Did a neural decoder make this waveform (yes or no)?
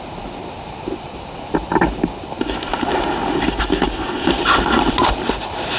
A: no